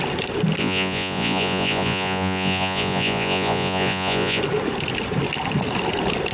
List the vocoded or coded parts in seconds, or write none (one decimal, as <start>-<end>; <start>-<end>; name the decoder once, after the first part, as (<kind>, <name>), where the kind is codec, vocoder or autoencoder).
0.6-4.4 (vocoder, Vocos)